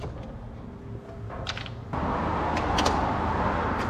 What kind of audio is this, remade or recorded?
recorded